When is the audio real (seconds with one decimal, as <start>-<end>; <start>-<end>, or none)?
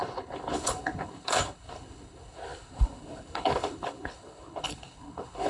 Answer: none